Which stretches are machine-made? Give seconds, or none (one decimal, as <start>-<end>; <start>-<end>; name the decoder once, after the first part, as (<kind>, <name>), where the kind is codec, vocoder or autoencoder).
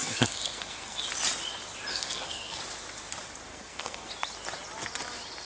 0.0-1.0 (codec, SNAC); 1.9-2.6; 3.5-4.1